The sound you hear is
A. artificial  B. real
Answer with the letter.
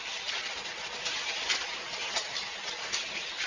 B